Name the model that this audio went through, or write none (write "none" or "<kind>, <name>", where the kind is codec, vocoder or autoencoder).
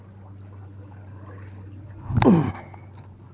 none